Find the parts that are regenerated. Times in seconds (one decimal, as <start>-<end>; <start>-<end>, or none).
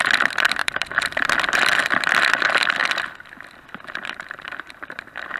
0.6-2.1; 2.8-5.4